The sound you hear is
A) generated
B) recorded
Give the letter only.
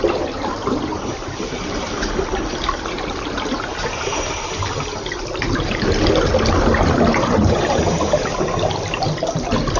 A